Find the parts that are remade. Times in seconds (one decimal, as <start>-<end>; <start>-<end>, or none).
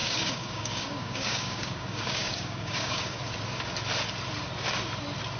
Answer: 0.0-3.2